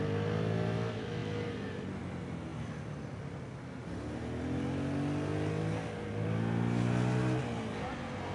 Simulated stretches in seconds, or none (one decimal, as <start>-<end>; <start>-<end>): none